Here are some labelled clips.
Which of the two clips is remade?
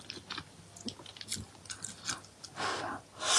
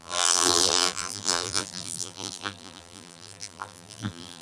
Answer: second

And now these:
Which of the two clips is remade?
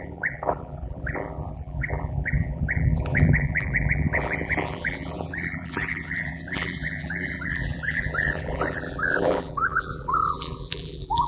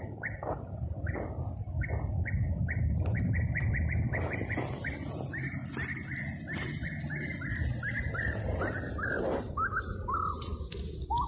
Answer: first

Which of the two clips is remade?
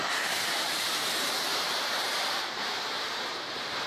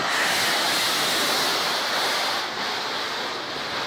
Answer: first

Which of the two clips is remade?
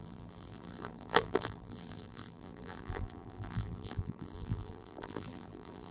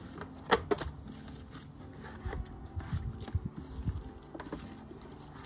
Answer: first